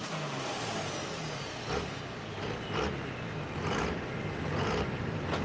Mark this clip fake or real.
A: real